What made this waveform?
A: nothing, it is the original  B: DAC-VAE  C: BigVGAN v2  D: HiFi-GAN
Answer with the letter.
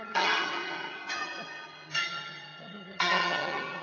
D